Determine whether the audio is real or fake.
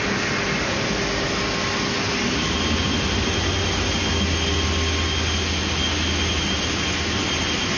real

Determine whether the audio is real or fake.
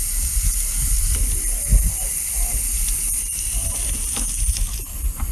real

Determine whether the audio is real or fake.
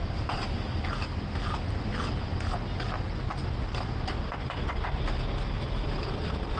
real